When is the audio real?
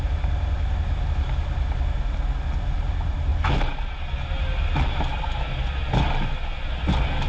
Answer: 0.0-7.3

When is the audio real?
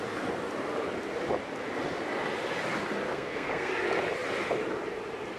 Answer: 0.0-3.1; 3.7-5.4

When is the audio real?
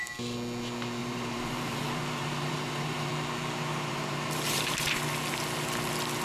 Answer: 0.0-1.0; 3.1-3.7; 4.8-6.2